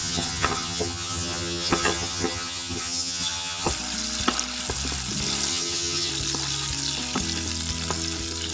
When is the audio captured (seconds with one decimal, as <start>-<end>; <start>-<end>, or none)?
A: 3.7-5.5; 6.1-8.5